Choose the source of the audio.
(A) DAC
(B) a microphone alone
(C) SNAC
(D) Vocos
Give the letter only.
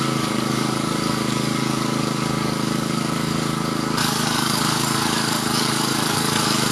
A